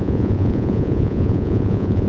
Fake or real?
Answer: fake